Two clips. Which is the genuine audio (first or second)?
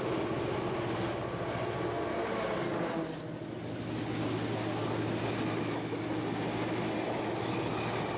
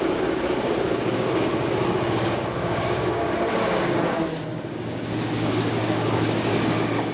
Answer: first